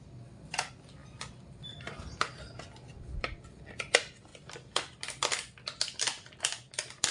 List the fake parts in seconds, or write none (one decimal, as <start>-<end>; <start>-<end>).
1.0-1.6